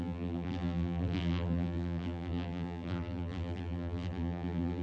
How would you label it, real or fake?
fake